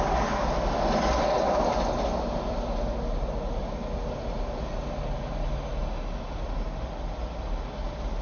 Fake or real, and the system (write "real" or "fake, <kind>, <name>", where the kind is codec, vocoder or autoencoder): real